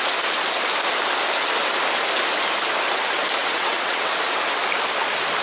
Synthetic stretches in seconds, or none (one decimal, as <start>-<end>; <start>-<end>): 3.4-4.1